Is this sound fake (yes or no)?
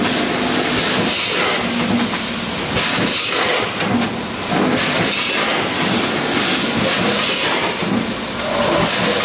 no